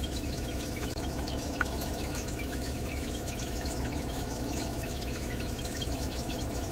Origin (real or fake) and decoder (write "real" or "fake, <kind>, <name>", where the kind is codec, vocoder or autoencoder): fake, autoencoder, DAC-VAE